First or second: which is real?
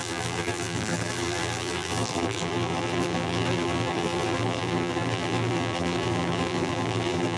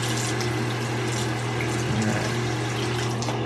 second